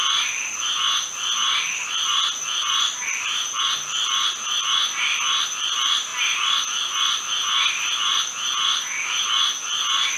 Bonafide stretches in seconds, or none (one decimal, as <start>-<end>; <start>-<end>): 0.0-10.2